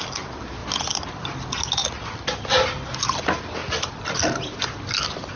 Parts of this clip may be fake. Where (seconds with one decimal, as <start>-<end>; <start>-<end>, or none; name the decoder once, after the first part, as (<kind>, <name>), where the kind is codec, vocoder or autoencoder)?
none